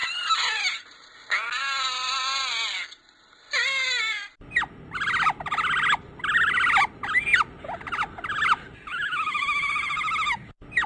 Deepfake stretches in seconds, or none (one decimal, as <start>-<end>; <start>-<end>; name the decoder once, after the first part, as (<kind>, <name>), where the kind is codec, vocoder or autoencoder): 8.9-9.7 (vocoder, BigVGAN v2)